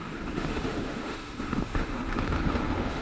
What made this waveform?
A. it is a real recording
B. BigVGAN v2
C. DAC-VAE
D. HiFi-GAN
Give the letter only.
C